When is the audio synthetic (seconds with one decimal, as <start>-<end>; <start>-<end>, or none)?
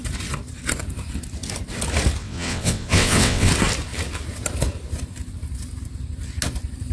2.2-3.5